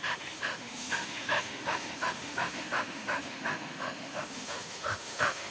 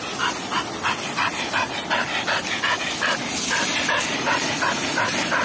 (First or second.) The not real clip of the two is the first